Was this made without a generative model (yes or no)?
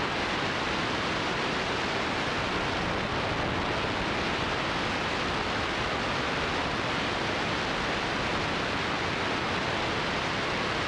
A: yes